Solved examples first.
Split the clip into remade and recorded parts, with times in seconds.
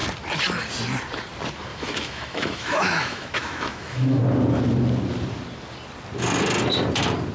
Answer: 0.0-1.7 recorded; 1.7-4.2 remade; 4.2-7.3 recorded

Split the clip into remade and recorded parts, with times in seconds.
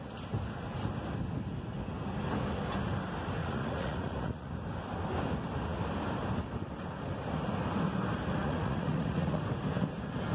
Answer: 0.0-3.4 recorded; 3.4-4.5 remade; 4.5-8.4 recorded; 8.4-9.4 remade; 9.4-10.3 recorded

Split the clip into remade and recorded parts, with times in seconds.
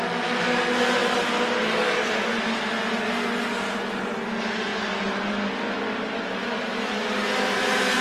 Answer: 0.0-8.0 recorded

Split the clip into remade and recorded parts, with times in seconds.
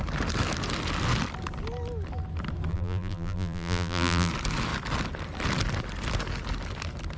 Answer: 0.0-2.7 recorded; 2.7-4.3 remade; 4.3-7.2 recorded